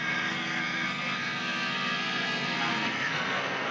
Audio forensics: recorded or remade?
remade